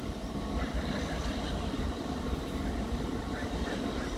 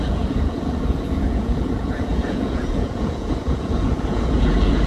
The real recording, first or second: first